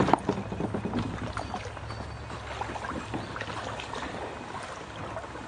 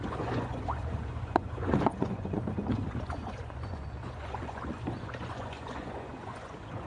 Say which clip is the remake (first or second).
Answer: second